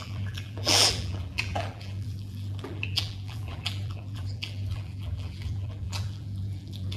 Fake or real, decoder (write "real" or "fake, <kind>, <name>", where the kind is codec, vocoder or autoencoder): fake, vocoder, BigVGAN v2